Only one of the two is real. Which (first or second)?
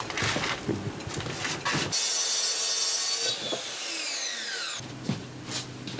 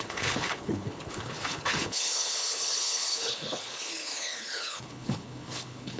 first